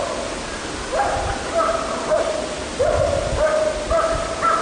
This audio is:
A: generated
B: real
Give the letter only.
B